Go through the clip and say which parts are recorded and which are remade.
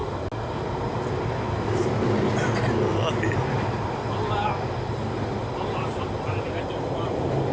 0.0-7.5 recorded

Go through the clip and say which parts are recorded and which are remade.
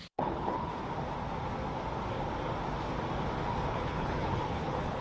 0.0-0.7 remade; 0.7-3.7 recorded; 3.7-5.0 remade